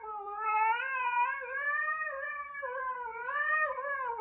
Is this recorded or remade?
remade